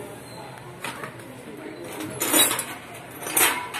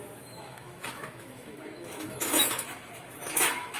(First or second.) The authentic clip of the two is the first